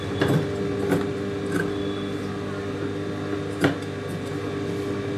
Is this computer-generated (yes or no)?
no